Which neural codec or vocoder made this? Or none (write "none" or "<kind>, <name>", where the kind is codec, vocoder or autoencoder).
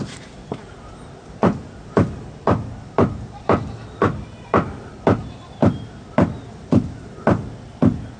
none